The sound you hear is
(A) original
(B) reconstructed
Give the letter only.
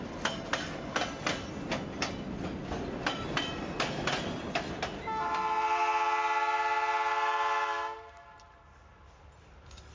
A